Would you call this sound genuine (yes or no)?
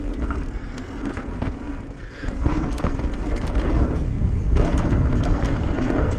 no